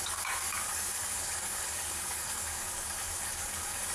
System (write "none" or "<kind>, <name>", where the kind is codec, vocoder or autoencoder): codec, DAC